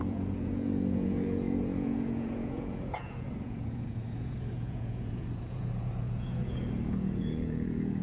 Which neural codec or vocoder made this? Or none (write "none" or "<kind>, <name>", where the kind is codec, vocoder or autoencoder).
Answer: vocoder, Vocos